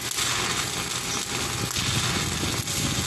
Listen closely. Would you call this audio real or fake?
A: real